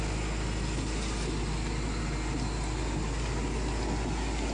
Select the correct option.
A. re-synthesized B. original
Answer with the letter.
B